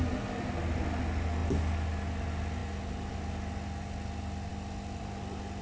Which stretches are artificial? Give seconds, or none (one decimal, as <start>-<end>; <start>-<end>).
none